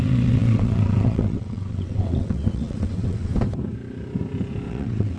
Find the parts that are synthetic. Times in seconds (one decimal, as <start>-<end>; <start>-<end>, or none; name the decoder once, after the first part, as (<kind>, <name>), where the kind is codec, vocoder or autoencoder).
0.0-3.3 (vocoder, WaveNeXt); 4.7-5.2